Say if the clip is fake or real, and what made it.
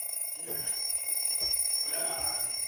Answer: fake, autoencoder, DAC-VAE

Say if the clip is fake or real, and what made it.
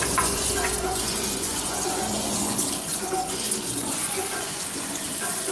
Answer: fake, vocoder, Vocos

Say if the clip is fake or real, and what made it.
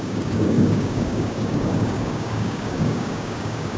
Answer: fake, codec, DAC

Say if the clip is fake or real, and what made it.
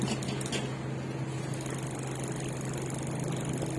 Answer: real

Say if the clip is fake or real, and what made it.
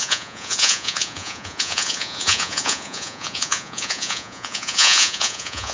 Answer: fake, vocoder, Vocos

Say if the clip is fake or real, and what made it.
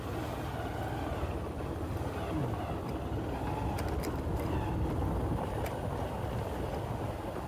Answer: real